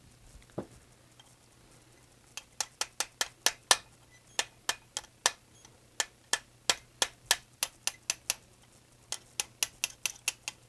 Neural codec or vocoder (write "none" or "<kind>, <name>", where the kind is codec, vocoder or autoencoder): none